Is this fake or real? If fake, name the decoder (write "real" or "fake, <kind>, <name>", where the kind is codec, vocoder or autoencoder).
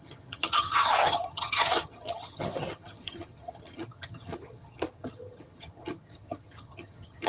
fake, vocoder, HiFi-GAN